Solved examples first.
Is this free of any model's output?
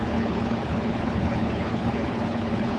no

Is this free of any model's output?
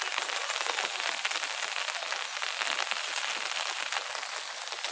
yes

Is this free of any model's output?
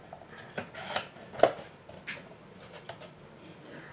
yes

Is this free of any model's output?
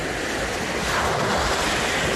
yes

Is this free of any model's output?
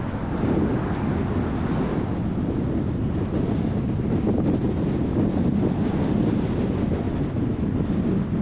yes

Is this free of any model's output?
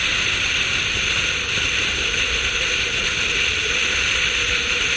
yes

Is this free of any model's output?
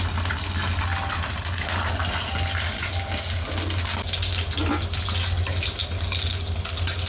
yes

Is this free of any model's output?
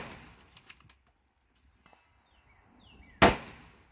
yes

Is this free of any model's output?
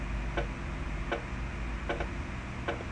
yes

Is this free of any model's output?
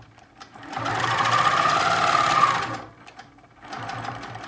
yes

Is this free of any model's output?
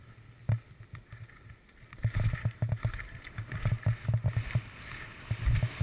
yes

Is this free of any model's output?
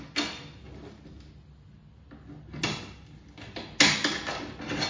yes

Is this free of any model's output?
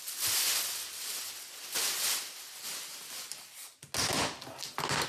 yes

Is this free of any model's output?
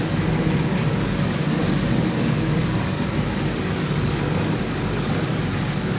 no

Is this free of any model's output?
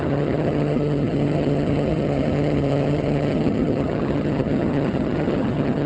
no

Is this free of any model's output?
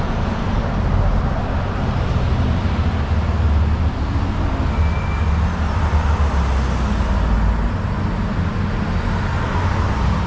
yes